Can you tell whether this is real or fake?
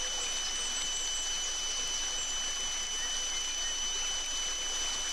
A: real